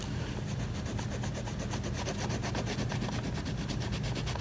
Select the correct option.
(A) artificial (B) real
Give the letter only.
B